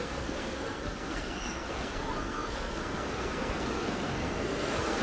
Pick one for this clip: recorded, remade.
remade